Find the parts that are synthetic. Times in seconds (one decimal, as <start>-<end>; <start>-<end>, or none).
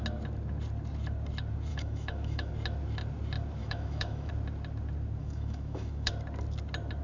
1.7-2.5; 3.6-4.3; 5.2-6.1